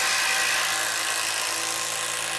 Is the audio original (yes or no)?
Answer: yes